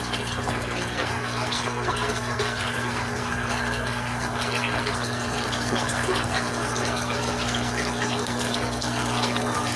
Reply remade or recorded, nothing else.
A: remade